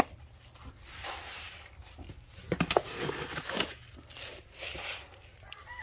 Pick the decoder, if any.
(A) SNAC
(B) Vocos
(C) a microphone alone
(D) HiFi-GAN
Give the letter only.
C